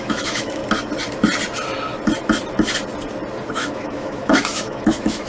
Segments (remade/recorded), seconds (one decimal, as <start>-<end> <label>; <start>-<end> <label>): 0.0-0.6 remade; 0.6-3.5 recorded; 3.5-5.3 remade